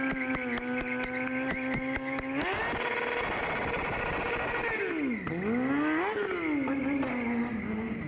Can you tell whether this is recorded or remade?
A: recorded